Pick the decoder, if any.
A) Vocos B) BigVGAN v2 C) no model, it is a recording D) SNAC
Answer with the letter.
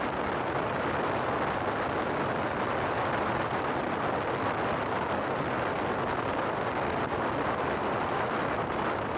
C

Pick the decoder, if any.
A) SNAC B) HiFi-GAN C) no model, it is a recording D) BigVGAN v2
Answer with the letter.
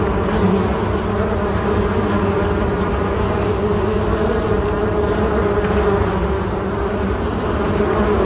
C